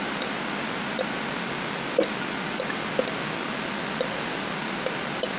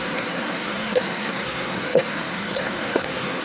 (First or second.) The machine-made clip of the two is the second